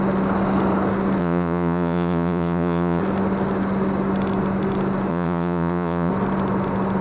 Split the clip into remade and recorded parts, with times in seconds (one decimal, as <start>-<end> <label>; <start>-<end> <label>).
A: 0.0-1.2 recorded; 1.2-3.0 remade; 3.0-5.1 recorded; 5.1-6.1 remade; 6.1-7.0 recorded